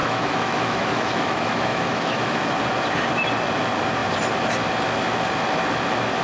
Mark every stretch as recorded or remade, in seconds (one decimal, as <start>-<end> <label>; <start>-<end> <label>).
0.0-2.5 remade; 2.5-6.2 recorded

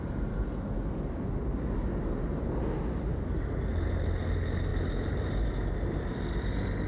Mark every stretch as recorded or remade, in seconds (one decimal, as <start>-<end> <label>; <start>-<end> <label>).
0.0-6.9 recorded

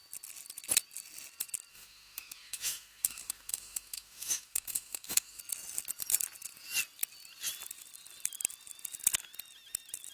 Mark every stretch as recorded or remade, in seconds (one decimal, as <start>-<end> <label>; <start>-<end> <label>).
0.0-1.7 recorded; 1.7-5.4 remade; 5.4-10.1 recorded